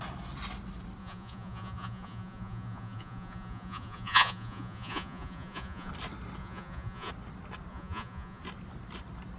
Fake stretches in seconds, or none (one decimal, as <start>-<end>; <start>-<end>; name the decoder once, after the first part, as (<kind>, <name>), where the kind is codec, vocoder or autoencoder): 1.0-5.9 (vocoder, Vocos); 6.4-7.1; 7.7-8.4